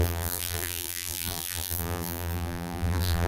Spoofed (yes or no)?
yes